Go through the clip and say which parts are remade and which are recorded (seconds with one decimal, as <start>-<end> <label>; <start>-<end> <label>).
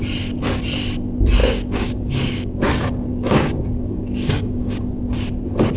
0.0-1.4 recorded; 1.4-2.7 remade; 2.7-3.1 recorded; 3.1-4.8 remade; 4.8-5.8 recorded